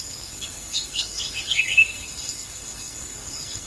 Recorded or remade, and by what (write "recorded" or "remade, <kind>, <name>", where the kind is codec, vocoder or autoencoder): remade, codec, SNAC